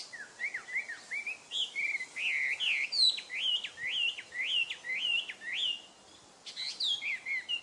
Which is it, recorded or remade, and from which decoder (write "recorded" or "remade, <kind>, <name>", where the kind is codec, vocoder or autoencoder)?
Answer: recorded